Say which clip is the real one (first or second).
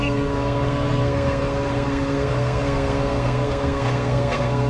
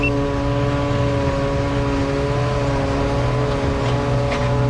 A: second